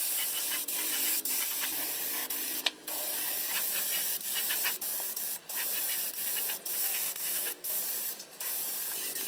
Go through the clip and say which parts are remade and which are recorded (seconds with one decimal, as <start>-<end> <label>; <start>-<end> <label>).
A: 0.0-6.8 recorded; 6.8-7.8 remade; 7.8-9.3 recorded